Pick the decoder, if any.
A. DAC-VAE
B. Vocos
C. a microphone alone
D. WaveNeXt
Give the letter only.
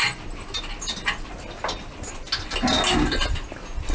C